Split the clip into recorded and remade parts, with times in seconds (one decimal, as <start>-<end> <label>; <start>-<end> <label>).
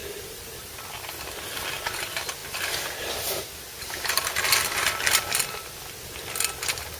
0.0-1.1 remade; 1.1-7.0 recorded